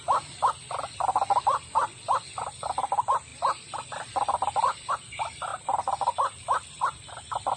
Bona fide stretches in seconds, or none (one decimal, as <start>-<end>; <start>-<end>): 0.0-3.3; 4.9-5.5; 6.7-7.6